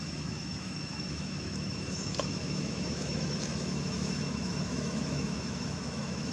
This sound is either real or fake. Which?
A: fake